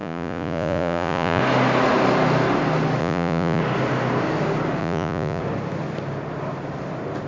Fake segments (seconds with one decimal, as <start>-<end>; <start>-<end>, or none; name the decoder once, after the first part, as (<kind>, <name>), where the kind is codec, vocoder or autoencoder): 0.0-1.4 (vocoder, Vocos); 3.0-3.6; 4.8-5.4